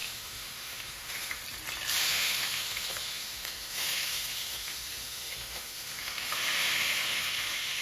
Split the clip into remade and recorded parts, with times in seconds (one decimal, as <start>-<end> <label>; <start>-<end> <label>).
0.0-1.4 remade; 1.4-2.0 recorded; 2.0-7.8 remade